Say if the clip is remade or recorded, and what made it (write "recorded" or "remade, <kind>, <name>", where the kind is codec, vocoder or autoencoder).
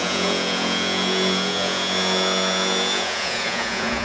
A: remade, vocoder, Vocos